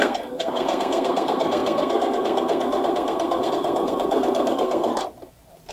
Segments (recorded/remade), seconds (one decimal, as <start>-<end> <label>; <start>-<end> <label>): 0.0-4.9 remade; 4.9-5.7 recorded